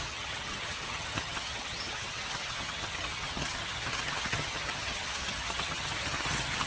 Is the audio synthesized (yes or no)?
yes